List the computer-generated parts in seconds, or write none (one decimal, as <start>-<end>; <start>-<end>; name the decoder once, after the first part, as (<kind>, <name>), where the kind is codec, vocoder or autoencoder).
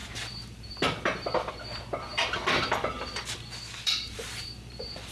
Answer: 0.0-1.5 (vocoder, BigVGAN v2); 2.1-5.1